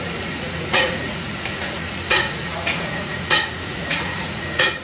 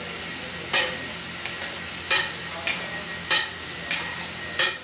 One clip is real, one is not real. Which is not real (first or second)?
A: first